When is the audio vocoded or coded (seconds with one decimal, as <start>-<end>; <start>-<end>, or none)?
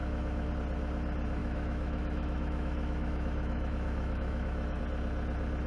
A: 0.0-0.5; 1.4-4.8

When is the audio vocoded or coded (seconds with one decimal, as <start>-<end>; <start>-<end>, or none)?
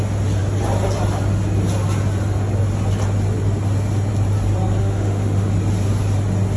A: 4.8-5.5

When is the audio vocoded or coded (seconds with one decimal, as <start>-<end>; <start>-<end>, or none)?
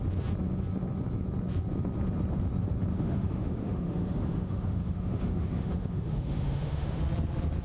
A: 2.9-7.0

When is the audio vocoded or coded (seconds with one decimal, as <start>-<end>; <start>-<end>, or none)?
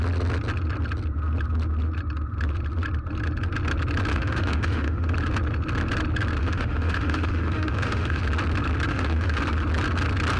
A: 4.1-5.1; 6.4-8.2; 8.9-9.4